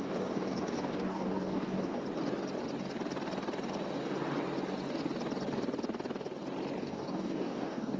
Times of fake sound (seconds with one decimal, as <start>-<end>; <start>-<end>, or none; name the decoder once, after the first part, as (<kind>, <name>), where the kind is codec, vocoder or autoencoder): 0.0-2.0 (codec, DAC); 6.8-8.0